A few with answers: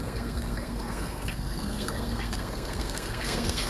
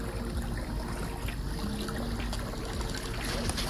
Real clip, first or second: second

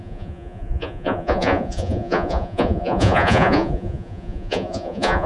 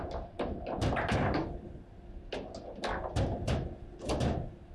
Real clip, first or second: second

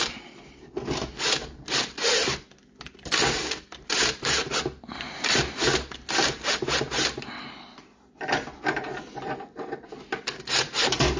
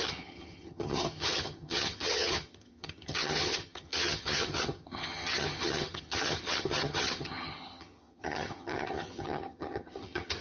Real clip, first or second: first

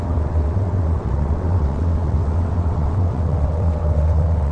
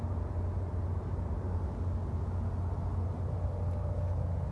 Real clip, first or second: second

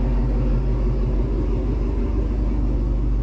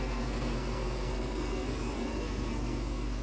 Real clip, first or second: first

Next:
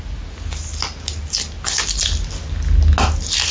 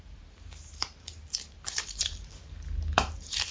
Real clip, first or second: first